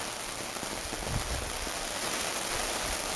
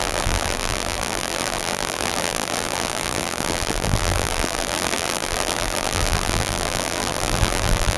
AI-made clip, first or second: second